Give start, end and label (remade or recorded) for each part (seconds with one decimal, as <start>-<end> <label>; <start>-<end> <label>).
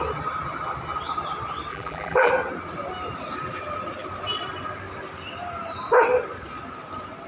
0.0-1.7 recorded; 1.7-2.3 remade; 2.3-7.3 recorded